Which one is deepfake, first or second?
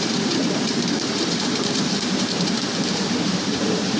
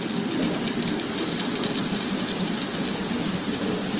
first